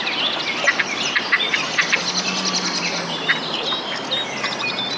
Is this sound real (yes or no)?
yes